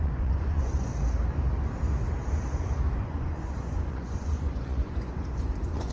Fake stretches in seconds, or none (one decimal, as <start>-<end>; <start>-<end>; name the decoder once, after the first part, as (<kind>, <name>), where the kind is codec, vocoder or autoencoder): 0.0-0.9 (vocoder, Vocos); 3.0-5.9